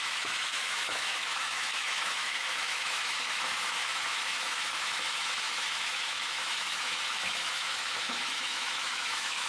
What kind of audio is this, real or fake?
fake